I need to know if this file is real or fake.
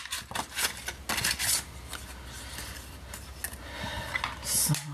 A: real